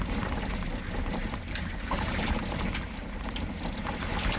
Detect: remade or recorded recorded